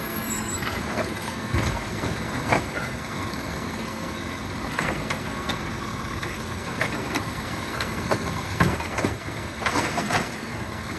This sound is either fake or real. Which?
fake